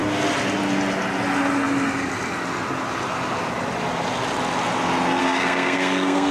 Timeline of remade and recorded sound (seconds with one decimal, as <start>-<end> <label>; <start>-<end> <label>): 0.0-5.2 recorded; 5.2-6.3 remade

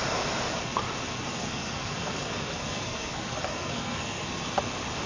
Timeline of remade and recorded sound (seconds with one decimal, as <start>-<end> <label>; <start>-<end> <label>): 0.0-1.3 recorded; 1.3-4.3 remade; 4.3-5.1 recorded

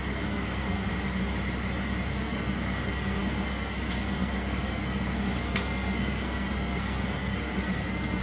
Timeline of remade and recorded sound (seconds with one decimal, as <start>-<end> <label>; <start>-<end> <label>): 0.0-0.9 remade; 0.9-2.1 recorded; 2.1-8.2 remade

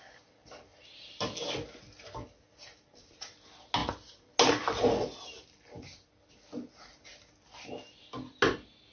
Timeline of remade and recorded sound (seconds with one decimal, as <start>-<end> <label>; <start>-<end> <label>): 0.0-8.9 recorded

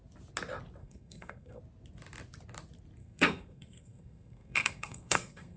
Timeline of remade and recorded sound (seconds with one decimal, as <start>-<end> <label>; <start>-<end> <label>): 0.0-0.8 recorded; 0.8-1.6 remade; 1.6-3.0 recorded; 3.0-5.6 remade

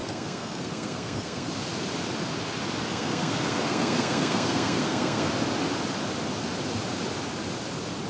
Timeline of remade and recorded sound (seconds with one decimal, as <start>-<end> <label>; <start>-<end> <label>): 0.0-1.5 remade; 1.5-2.9 recorded; 2.9-5.3 remade; 5.3-8.1 recorded

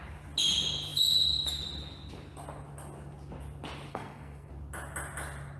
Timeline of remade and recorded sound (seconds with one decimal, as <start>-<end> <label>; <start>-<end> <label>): 0.0-3.9 recorded; 3.9-4.5 remade; 4.5-5.6 recorded

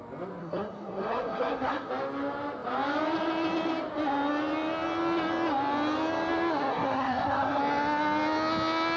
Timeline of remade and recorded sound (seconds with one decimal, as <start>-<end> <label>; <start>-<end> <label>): 0.0-0.4 recorded; 0.4-1.9 remade; 1.9-6.7 recorded; 6.7-7.6 remade; 7.6-9.0 recorded